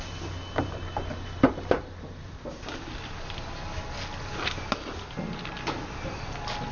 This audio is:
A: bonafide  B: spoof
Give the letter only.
A